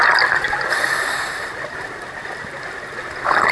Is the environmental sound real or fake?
real